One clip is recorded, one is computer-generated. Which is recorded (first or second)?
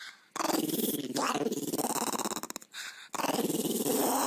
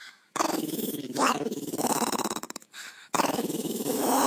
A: first